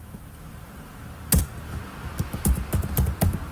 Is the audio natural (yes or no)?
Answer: yes